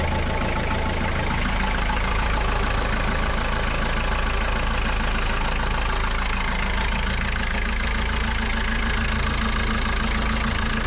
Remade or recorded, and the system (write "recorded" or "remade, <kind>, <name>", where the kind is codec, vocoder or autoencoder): recorded